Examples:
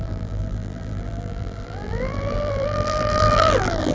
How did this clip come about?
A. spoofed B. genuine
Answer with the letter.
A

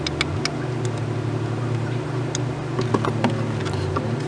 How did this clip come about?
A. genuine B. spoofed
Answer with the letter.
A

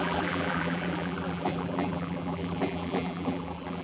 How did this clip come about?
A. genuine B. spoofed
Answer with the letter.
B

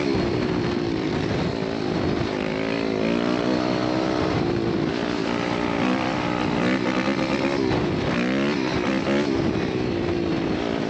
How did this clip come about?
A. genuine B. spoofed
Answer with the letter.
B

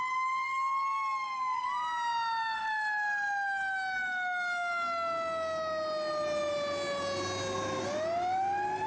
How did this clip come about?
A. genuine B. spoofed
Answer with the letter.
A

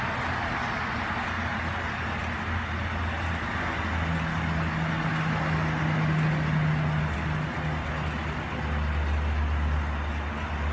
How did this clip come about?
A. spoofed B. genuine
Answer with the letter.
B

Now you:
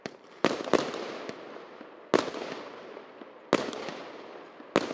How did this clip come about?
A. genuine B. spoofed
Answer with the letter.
A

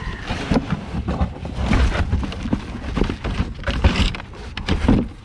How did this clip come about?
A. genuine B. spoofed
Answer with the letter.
B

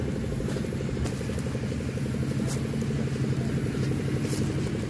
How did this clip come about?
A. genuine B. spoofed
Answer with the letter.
A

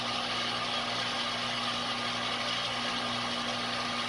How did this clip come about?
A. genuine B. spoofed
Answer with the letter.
A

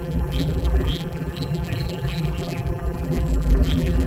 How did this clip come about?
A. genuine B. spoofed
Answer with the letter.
B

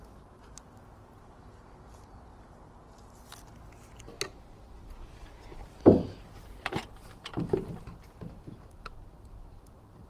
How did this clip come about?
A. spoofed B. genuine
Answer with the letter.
B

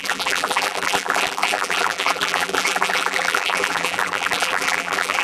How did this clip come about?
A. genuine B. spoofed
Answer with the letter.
B